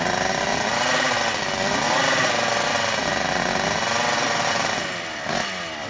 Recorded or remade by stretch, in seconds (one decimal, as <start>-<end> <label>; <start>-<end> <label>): 0.0-5.9 recorded